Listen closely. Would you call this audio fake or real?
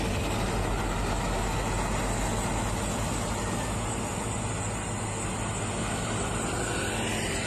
real